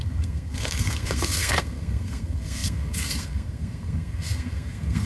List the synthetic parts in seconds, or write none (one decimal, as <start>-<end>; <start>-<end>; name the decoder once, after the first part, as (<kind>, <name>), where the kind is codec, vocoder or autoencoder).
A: 0.0-5.1 (codec, SNAC)